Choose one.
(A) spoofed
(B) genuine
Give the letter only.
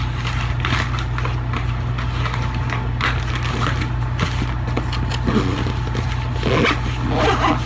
B